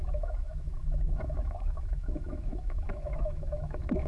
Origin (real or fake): fake